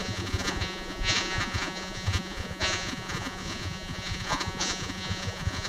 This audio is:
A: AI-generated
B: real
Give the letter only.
A